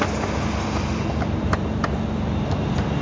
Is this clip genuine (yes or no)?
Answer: yes